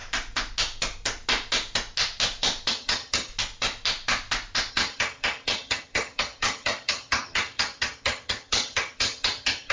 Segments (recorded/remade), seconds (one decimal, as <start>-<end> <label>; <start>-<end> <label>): 0.0-2.7 recorded; 2.7-3.3 remade; 3.3-4.7 recorded; 4.7-9.7 remade